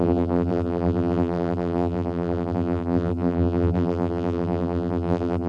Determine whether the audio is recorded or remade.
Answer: remade